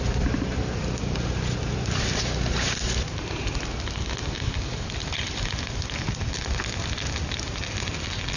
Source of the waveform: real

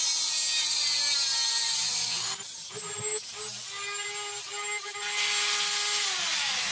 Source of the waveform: real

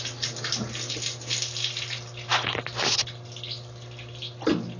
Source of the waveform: real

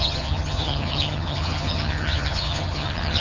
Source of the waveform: fake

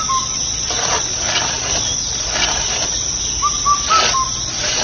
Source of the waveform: real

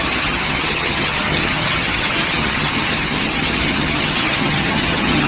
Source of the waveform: fake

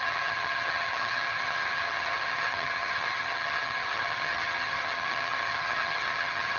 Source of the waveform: fake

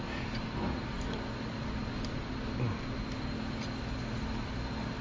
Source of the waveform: real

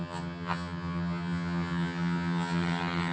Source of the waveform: fake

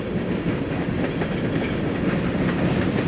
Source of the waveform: real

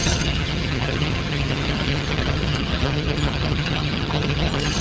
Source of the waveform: fake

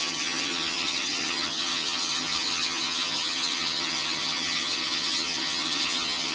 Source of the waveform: fake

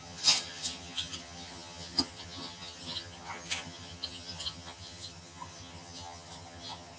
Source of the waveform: fake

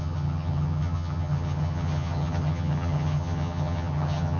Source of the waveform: fake